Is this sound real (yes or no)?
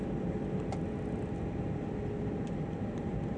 yes